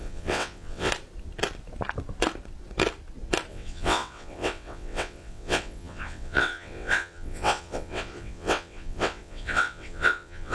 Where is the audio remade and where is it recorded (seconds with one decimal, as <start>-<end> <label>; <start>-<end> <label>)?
0.0-0.9 remade; 0.9-3.5 recorded; 3.5-10.5 remade